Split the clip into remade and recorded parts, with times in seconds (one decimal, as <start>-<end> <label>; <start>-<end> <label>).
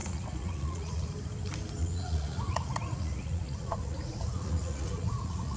0.0-1.1 remade; 1.1-1.8 recorded; 1.8-5.6 remade